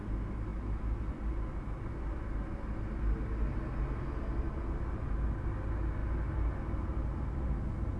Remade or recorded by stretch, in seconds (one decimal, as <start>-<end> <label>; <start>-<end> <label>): 0.0-8.0 recorded